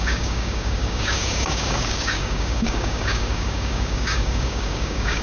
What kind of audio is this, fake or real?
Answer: fake